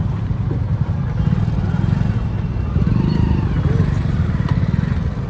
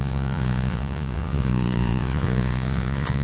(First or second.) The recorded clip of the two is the first